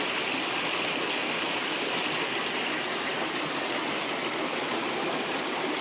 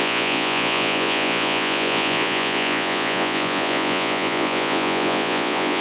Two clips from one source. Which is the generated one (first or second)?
second